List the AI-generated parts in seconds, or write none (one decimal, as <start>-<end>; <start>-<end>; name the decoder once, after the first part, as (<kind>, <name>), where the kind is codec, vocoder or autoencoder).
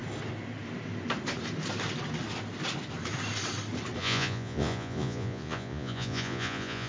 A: 4.0-6.9 (vocoder, Vocos)